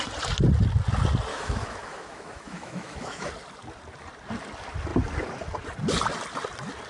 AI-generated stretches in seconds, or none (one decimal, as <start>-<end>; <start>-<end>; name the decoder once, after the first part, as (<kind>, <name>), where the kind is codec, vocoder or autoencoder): 1.3-3.3 (autoencoder, DAC-VAE)